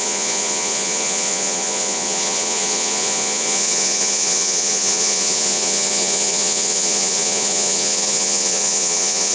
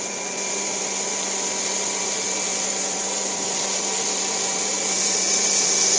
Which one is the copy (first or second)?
first